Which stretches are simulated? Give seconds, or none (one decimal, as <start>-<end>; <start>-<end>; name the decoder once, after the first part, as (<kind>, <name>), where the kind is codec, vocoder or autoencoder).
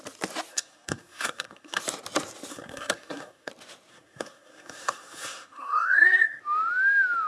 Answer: 0.5-1.8 (codec, SNAC); 2.5-3.5; 3.9-6.4